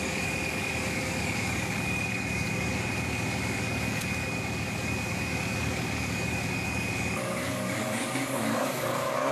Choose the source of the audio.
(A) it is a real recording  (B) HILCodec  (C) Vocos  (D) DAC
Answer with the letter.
D